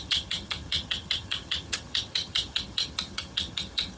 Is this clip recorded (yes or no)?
no